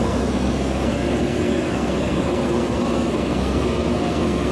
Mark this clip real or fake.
fake